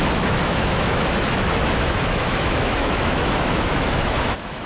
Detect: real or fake fake